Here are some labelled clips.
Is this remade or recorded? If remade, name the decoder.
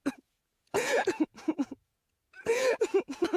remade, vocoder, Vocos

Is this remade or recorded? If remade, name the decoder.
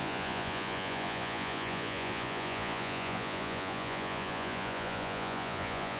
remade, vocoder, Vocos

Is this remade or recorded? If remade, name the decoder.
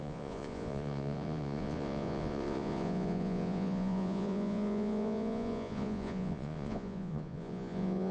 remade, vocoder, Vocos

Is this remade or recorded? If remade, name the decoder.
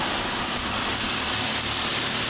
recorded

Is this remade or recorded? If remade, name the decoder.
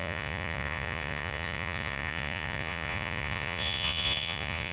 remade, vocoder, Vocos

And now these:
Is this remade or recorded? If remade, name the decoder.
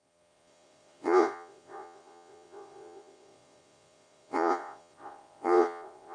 remade, vocoder, Vocos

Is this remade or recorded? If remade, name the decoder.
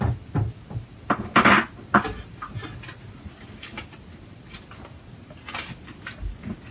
recorded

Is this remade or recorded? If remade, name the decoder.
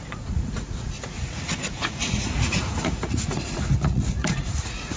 remade, vocoder, Vocos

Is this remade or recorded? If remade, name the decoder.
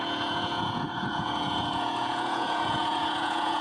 remade, vocoder, Vocos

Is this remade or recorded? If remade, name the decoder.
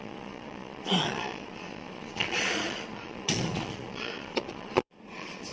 remade, vocoder, Vocos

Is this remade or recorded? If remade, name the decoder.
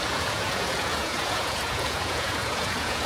remade, vocoder, Vocos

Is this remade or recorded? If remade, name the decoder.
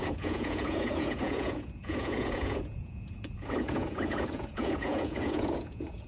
remade, vocoder, Vocos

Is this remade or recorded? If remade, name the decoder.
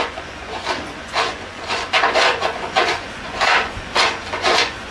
remade, vocoder, Vocos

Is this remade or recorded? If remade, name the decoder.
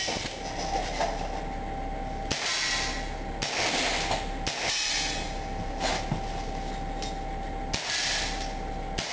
recorded